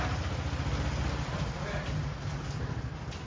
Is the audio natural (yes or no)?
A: yes